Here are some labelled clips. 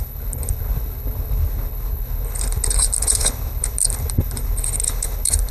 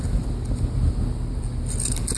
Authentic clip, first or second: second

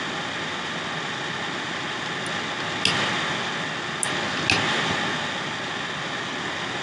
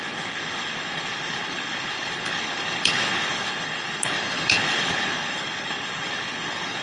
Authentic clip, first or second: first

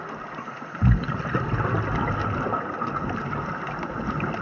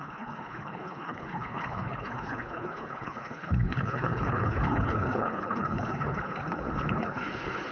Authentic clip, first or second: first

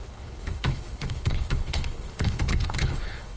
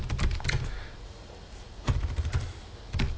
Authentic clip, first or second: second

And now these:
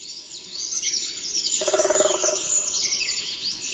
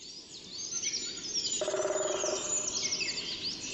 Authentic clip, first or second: second